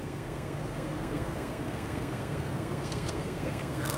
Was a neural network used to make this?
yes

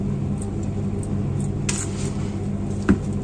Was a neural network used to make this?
no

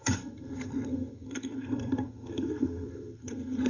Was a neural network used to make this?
yes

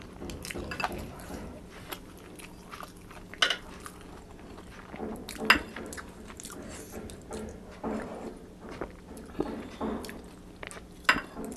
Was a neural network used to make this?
no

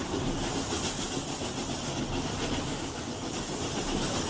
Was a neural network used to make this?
no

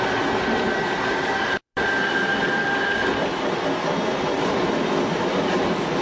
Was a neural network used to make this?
no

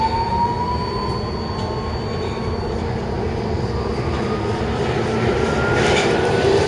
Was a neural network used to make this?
no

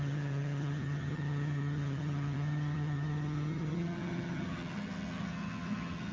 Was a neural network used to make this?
yes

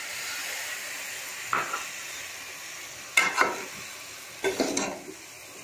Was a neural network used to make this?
no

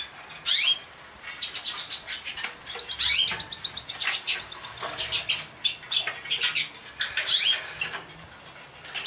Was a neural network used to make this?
no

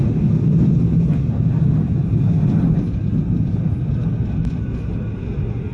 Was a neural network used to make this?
no